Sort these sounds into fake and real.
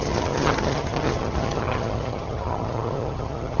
fake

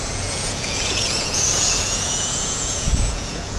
fake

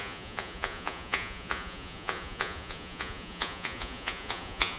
fake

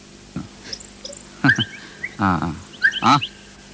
real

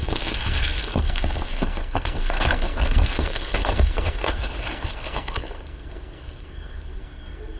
fake